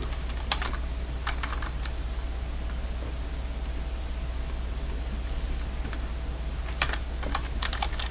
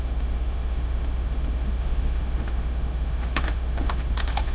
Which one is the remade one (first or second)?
second